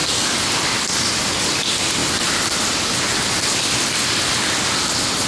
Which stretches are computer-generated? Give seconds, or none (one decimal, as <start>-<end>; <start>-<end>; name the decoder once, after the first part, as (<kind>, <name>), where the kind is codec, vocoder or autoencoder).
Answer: 2.0-4.0 (vocoder, BigVGAN v2)